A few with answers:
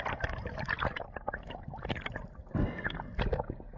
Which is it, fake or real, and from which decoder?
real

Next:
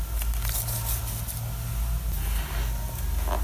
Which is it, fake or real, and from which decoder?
real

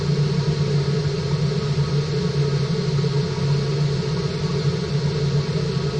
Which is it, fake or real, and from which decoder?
real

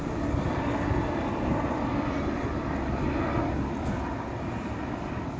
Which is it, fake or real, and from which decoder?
real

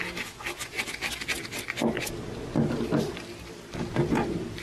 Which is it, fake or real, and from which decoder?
real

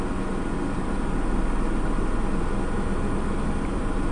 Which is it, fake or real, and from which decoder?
real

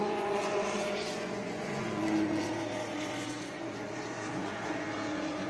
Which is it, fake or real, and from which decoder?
fake, vocoder, Vocos